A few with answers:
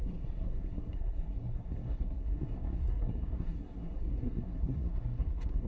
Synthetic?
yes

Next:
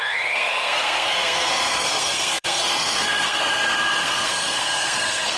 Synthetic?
yes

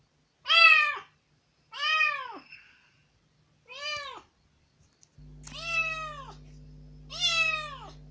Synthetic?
no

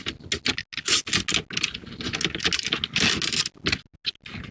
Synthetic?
no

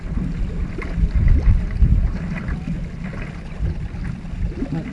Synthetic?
no